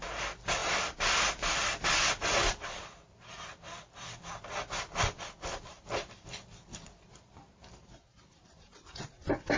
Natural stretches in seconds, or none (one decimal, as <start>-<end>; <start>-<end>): 0.0-9.6